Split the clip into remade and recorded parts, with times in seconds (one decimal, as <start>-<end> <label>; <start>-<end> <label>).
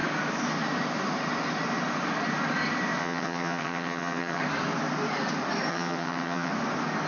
0.0-3.0 recorded; 3.0-4.4 remade; 4.4-5.7 recorded; 5.7-6.5 remade; 6.5-7.1 recorded